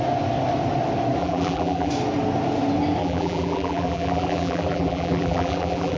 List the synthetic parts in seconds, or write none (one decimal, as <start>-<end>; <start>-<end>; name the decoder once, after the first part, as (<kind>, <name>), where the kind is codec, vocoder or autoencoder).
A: 1.2-1.9 (vocoder, BigVGAN v2); 3.0-6.0